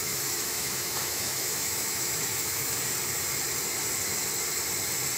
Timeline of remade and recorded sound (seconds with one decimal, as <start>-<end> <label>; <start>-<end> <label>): 0.0-2.7 remade; 2.7-5.2 recorded